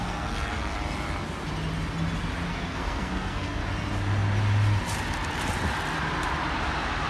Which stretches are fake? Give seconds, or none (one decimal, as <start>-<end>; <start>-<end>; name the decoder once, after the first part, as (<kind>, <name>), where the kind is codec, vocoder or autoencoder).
0.0-0.7 (codec, SNAC); 2.5-3.6